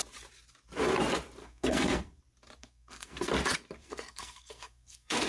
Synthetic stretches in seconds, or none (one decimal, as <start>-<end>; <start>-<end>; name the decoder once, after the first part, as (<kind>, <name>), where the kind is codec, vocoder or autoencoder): 1.4-2.2 (codec, SNAC); 2.6-3.3; 3.8-5.3